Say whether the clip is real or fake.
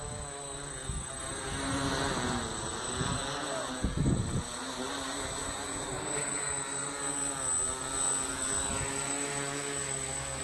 real